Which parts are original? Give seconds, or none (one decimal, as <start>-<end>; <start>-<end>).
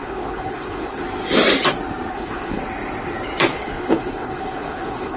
1.0-2.1; 2.6-3.5